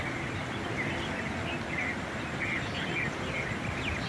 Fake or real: real